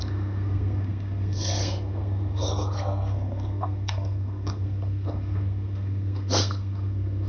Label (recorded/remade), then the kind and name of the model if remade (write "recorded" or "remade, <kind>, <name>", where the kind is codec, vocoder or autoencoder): remade, codec, SNAC